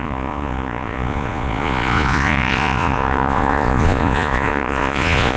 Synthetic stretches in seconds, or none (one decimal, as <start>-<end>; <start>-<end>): 0.0-5.4